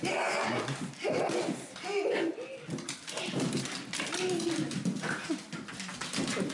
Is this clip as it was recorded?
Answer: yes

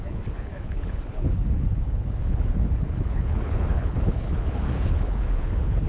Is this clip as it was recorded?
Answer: no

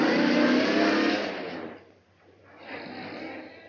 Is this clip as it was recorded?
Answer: yes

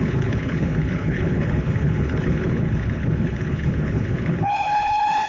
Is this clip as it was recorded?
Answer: no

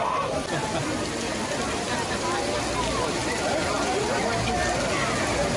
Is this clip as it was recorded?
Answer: yes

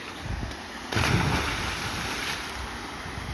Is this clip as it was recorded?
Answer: yes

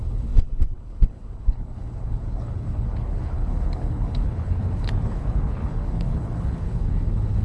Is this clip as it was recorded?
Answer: no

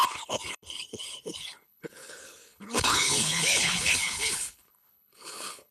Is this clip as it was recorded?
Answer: no